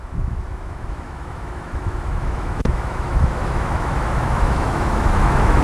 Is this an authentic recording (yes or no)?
no